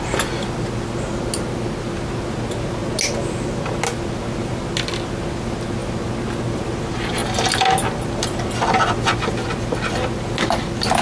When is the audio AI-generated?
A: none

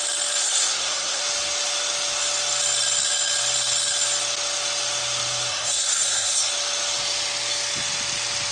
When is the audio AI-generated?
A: 0.4-1.2 (codec, SNAC); 5.5-6.5

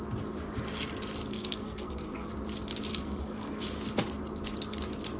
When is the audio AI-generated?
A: 1.3-2.3 (codec, SNAC); 2.9-3.6

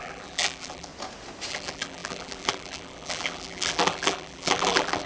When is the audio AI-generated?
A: 0.0-0.9 (vocoder, BigVGAN v2); 1.5-5.1